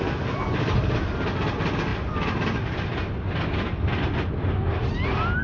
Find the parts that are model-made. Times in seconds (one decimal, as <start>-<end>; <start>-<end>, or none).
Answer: none